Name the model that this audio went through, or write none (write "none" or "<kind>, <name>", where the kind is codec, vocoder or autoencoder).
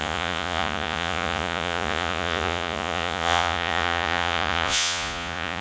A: vocoder, Vocos